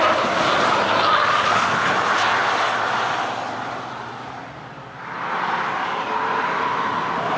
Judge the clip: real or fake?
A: real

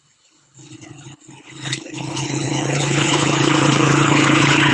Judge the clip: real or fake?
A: fake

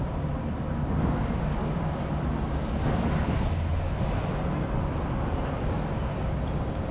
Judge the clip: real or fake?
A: real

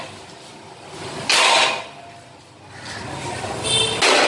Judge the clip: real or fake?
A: real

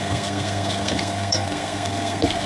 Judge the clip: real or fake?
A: fake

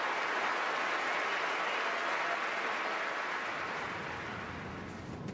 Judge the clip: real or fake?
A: real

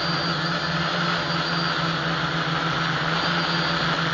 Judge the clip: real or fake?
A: real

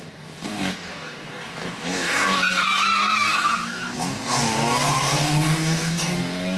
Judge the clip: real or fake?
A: fake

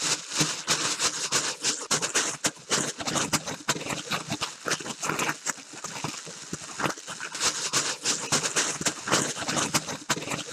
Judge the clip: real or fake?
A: real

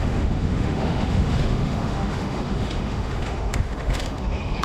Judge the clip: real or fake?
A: fake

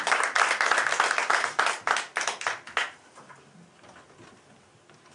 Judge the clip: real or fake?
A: real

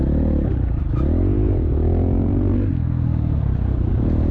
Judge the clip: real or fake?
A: real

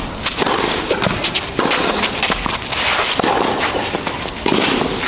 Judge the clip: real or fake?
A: real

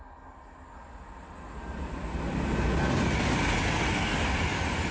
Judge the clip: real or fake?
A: real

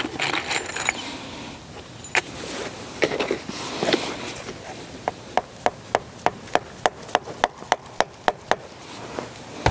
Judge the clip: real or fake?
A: real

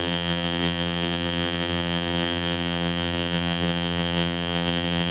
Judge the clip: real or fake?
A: fake